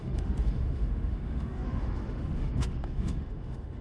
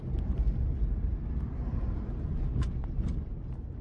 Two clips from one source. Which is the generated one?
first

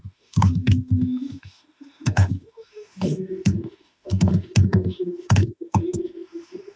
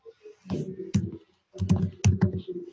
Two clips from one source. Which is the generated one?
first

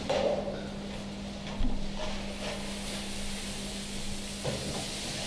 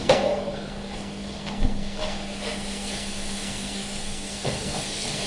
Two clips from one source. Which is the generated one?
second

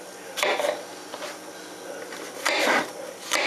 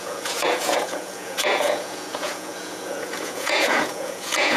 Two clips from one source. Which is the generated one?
second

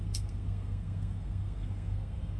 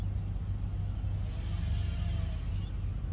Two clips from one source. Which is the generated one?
first